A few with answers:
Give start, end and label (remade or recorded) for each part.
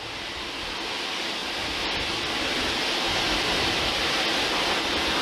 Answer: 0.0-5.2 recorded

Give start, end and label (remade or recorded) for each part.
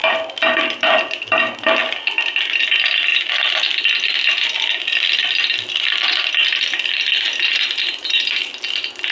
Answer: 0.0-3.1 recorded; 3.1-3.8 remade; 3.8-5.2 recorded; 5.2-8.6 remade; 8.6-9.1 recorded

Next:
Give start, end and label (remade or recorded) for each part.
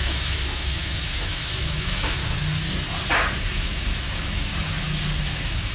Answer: 0.0-2.2 remade; 2.2-3.5 recorded; 3.5-4.5 remade; 4.5-5.2 recorded; 5.2-5.7 remade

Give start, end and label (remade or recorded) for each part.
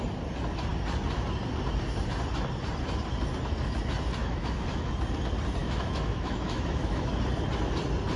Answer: 0.0-4.2 recorded; 4.2-4.9 remade; 4.9-5.6 recorded; 5.6-7.1 remade; 7.1-8.2 recorded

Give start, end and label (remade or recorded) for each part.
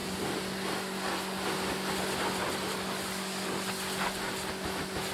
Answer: 0.0-5.1 recorded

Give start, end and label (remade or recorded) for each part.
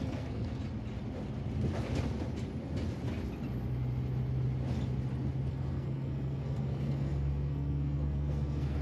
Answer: 0.0-0.6 remade; 0.6-5.5 recorded; 5.5-8.8 remade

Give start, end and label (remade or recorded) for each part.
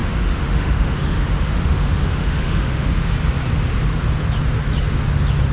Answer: 0.0-3.1 remade; 3.1-5.5 recorded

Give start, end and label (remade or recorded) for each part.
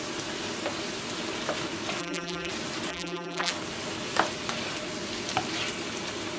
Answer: 0.0-2.0 recorded; 2.0-2.5 remade; 2.5-2.9 recorded; 2.9-3.5 remade; 3.5-6.4 recorded